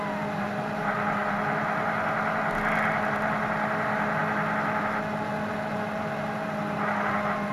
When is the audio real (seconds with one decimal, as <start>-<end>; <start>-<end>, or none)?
0.0-7.5